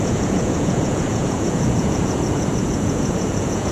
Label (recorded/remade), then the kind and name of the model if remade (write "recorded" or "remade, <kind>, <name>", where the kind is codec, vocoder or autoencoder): remade, vocoder, Vocos